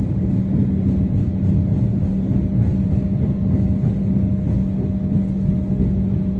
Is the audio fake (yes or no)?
no